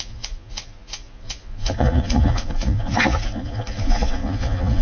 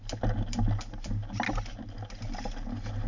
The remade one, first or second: first